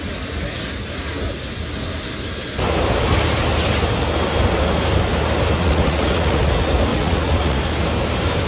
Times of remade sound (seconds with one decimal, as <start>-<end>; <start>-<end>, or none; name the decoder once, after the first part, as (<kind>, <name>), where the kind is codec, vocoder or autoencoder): 5.6-6.5 (vocoder, Vocos); 6.9-7.6